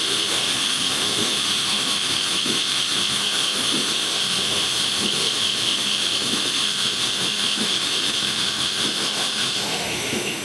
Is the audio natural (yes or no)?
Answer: no